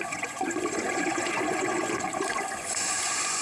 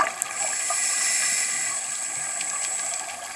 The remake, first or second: first